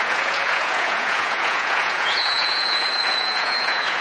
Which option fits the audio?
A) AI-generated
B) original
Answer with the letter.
A